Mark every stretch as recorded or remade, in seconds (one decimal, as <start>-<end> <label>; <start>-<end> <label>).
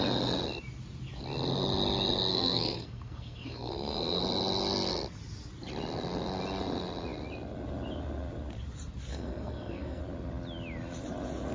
0.0-2.3 recorded; 2.3-4.2 remade; 4.2-9.1 recorded; 9.1-10.0 remade; 10.0-11.5 recorded